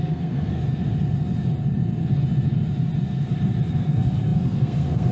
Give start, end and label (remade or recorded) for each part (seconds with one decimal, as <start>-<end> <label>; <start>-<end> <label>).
0.0-0.6 remade; 0.6-3.7 recorded; 3.7-5.1 remade